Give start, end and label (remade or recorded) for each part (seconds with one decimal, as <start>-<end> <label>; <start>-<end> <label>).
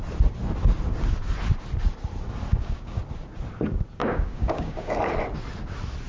0.0-2.5 recorded; 2.5-3.0 remade; 3.0-4.0 recorded; 4.0-4.9 remade; 4.9-6.1 recorded